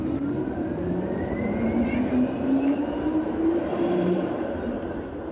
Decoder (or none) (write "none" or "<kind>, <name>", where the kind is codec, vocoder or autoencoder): vocoder, BigVGAN v2